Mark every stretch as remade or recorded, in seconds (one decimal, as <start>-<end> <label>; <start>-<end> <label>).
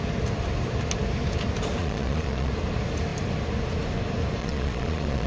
0.0-1.8 recorded; 1.8-2.5 remade; 2.5-4.4 recorded; 4.4-5.3 remade